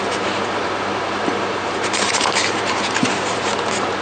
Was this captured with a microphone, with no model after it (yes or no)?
no